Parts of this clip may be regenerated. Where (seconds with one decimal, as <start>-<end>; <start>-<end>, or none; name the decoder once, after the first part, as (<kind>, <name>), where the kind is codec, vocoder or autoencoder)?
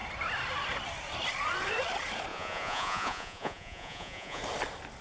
2.3-4.4 (vocoder, Vocos)